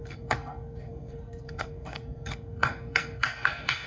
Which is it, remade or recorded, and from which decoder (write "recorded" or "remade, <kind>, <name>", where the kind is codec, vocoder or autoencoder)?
remade, codec, SNAC